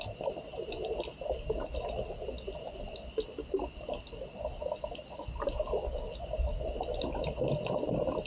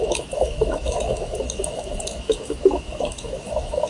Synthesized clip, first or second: second